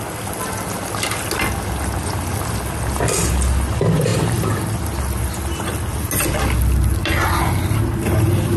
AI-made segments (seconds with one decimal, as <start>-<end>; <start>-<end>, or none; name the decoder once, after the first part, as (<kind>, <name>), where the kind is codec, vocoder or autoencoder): none